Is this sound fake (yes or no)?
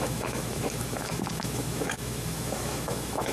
yes